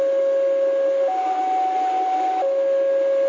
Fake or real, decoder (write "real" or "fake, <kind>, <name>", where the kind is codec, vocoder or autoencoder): real